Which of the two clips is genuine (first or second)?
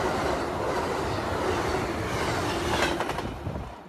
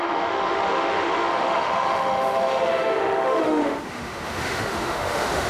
first